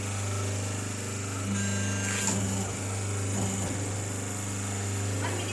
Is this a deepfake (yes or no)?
no